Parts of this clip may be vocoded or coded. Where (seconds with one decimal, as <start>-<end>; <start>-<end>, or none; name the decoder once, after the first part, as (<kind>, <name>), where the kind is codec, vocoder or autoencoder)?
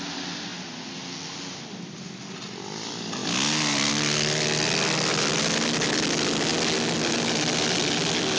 none